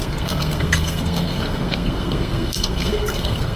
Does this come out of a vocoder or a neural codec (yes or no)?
yes